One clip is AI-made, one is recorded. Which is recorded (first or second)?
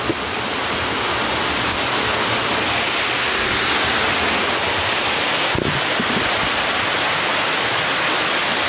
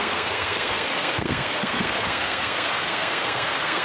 first